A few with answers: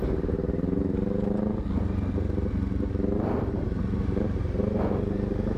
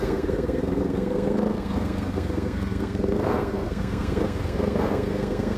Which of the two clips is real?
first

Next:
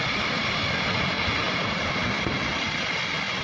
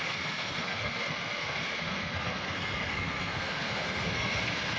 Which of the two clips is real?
first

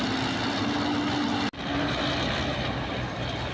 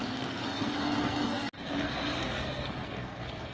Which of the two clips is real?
first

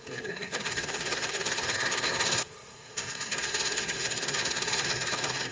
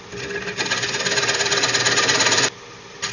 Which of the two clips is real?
second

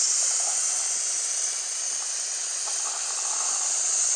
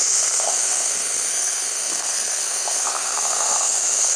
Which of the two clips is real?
first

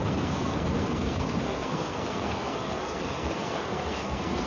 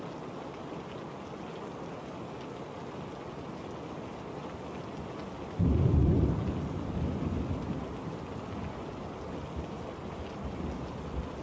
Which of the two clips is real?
second